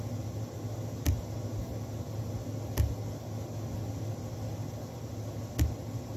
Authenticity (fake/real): real